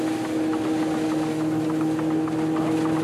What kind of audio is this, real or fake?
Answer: real